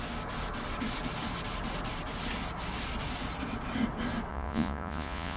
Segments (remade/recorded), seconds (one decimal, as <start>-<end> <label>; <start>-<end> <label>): 0.0-4.3 recorded; 4.3-5.4 remade